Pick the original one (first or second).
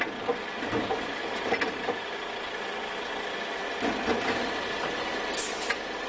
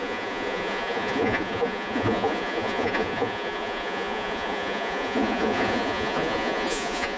first